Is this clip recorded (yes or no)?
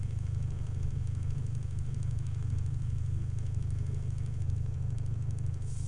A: no